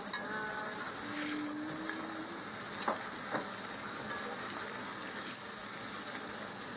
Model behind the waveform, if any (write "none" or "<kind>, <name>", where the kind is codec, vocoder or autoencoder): none